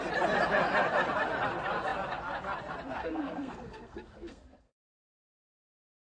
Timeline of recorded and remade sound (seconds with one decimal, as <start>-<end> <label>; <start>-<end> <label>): 0.0-3.0 recorded; 3.0-5.2 remade; 5.2-6.2 recorded